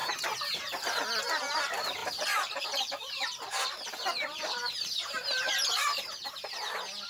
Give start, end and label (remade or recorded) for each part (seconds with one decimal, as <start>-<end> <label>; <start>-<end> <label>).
0.0-2.0 recorded; 2.0-6.3 remade; 6.3-7.1 recorded